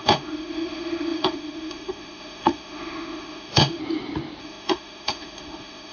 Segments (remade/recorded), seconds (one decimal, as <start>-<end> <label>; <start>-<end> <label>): 0.0-3.8 remade; 3.8-4.4 recorded; 4.4-5.9 remade